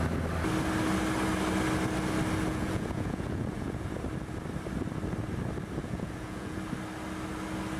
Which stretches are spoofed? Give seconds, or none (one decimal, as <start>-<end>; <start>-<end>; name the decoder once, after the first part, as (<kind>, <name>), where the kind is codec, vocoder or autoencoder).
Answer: 2.5-3.9 (vocoder, Vocos); 5.8-6.6